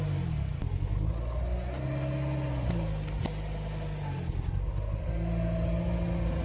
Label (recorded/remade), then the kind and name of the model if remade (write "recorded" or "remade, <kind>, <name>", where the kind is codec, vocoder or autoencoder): recorded